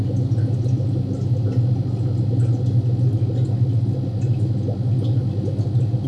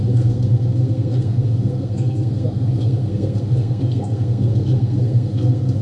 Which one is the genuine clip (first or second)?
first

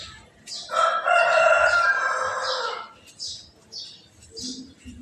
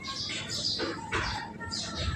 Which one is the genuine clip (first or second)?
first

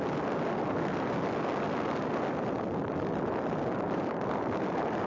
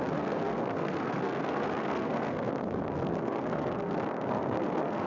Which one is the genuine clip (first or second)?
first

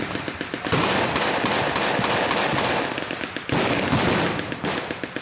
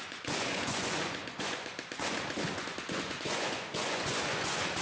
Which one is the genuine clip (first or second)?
first